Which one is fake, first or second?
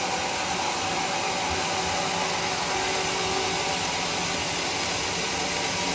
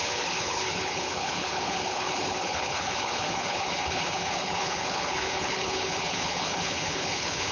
second